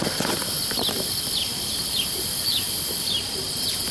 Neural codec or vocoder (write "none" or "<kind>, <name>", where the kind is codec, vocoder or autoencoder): vocoder, BigVGAN v2